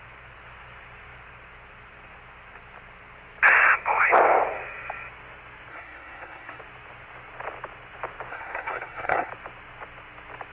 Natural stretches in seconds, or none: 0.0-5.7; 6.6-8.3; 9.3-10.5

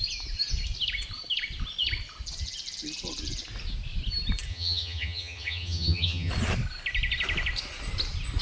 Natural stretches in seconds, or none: 0.0-4.5; 6.3-8.4

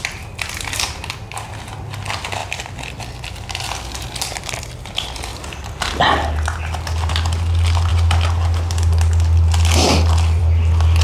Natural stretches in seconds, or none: 0.0-11.0